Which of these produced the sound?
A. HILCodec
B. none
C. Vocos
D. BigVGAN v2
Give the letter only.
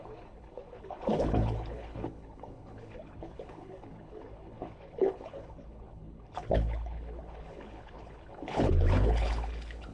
A